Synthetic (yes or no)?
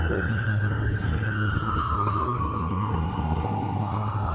yes